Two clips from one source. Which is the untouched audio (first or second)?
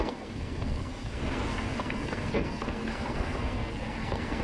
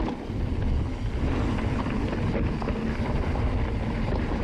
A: second